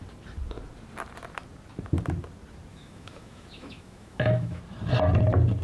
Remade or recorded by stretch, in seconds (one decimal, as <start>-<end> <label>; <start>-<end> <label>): 0.0-2.7 recorded; 2.7-4.6 remade; 4.6-5.6 recorded